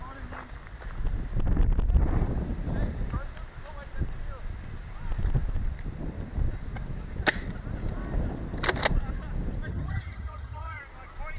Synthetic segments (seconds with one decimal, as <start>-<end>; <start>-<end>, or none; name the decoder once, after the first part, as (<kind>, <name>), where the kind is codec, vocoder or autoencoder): 9.7-10.8 (vocoder, HiFi-GAN)